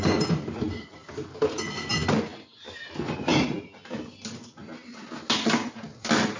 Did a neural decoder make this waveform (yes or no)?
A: no